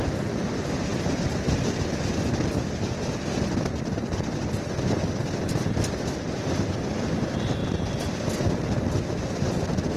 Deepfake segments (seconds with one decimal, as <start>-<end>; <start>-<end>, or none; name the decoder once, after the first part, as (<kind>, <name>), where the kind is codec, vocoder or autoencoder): 7.6-8.3 (vocoder, BigVGAN v2)